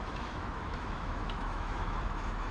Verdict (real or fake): fake